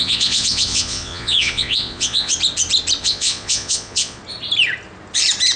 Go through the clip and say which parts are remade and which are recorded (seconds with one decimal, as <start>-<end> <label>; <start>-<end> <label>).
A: 0.0-2.3 remade; 2.3-3.0 recorded; 3.0-4.2 remade; 4.2-5.6 recorded